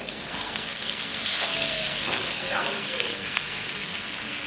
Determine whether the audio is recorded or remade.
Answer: remade